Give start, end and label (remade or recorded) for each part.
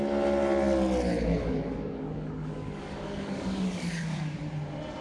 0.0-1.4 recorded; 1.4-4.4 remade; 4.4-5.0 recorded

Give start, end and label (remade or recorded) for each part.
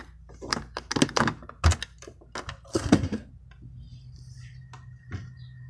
0.0-2.7 recorded; 2.7-3.3 remade; 3.3-5.7 recorded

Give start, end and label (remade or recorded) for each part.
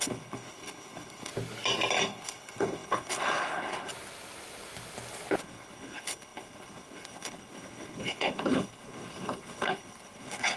0.0-1.3 remade; 1.3-2.0 recorded; 2.0-3.9 remade; 3.9-5.4 recorded; 5.4-10.6 remade